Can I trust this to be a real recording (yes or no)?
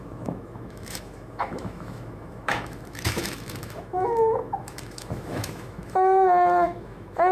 no